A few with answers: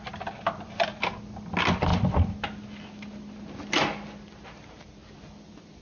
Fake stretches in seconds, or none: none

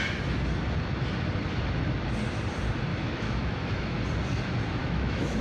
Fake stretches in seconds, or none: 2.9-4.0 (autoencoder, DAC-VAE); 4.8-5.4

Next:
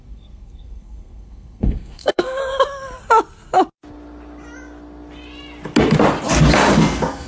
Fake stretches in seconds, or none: 0.0-2.4 (codec, SNAC); 6.8-7.3